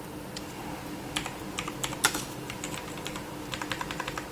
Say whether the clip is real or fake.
real